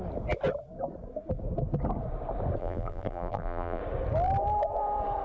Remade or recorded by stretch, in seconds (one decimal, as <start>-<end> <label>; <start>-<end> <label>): 0.0-2.6 recorded; 2.6-3.8 remade; 3.8-5.2 recorded